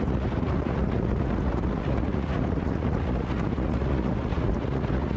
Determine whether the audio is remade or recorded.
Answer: remade